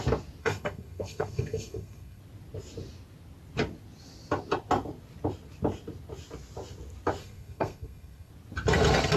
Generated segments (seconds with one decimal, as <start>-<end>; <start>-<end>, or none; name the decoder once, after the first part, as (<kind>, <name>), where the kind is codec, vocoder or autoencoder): 0.4-2.2 (codec, SNAC); 7.2-8.3